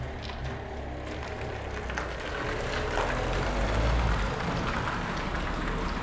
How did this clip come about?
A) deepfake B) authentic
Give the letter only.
B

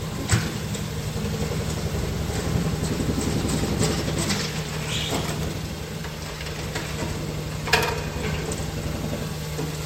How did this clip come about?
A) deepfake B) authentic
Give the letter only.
B